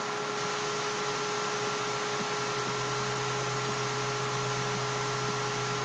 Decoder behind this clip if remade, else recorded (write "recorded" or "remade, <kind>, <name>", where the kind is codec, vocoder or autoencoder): recorded